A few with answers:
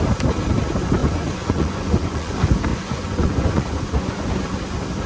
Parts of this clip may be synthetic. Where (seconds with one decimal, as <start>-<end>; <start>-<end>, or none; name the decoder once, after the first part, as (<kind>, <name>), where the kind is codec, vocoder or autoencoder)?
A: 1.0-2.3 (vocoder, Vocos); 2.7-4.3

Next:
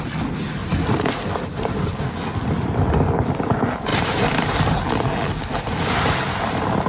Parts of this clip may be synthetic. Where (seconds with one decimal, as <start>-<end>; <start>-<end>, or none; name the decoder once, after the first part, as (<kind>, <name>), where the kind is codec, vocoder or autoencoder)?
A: 3.9-4.6 (vocoder, BigVGAN v2)

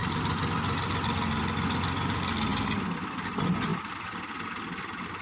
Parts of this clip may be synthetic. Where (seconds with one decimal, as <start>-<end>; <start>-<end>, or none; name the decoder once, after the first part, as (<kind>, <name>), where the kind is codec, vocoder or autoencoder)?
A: none

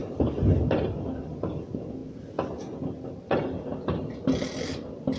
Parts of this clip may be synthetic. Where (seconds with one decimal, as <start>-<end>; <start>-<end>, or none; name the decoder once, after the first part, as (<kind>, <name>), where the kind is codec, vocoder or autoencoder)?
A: none

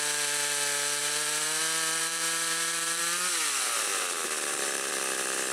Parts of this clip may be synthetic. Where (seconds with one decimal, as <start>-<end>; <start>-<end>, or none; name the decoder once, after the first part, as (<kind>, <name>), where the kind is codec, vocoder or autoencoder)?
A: 1.0-1.6 (vocoder, BigVGAN v2); 2.0-3.0; 3.9-4.9